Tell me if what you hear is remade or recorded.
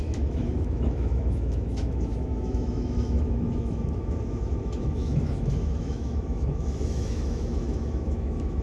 remade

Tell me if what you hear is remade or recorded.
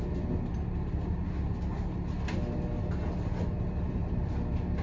recorded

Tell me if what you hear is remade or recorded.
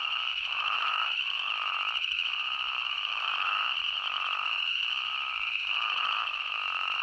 remade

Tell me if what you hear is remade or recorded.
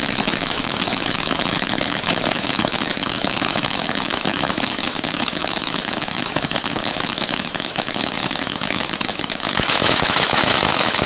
remade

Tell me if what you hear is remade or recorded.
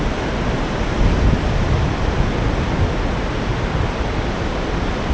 recorded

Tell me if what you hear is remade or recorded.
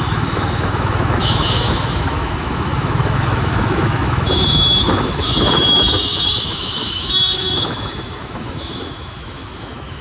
remade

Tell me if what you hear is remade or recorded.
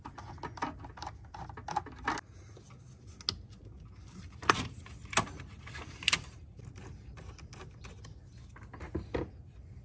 recorded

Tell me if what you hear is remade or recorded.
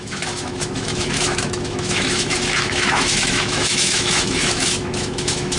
remade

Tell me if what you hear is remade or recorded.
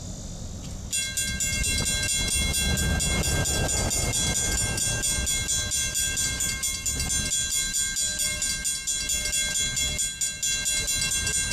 recorded